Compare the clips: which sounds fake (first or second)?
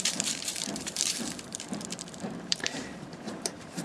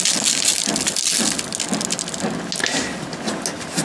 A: first